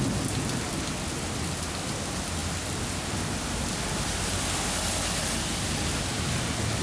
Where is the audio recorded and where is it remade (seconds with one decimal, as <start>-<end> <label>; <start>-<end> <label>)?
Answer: 0.0-6.8 recorded